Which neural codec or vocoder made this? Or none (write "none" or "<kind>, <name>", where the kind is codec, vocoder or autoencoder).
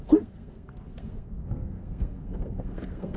codec, SNAC